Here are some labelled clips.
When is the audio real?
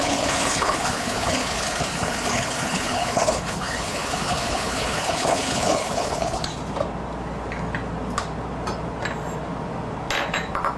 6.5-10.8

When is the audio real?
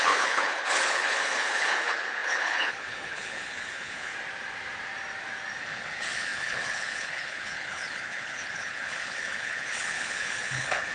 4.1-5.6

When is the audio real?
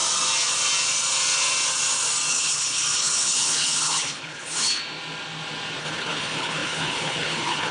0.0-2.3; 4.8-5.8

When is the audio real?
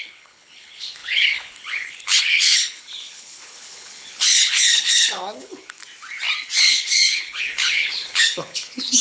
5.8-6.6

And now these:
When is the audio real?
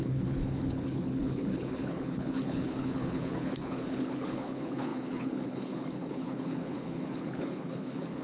none